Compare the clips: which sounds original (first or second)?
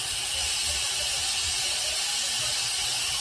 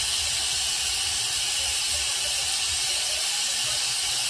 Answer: first